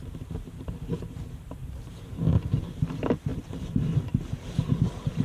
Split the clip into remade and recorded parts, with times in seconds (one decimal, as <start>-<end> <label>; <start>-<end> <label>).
0.0-5.2 remade